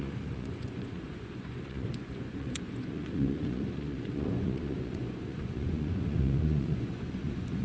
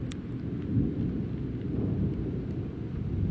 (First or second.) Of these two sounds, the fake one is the first